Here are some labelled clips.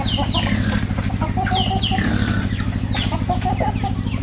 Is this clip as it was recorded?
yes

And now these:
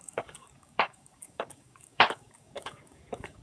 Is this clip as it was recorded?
no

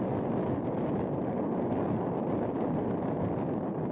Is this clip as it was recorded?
yes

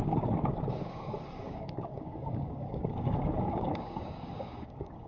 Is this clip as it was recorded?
no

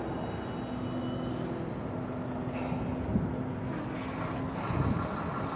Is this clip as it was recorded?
yes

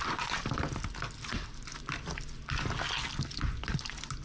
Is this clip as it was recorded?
yes